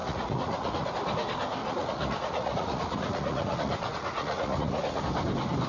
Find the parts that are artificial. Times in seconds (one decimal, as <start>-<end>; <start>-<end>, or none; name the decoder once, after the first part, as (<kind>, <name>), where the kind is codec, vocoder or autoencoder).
0.0-0.9 (vocoder, Vocos); 1.6-5.0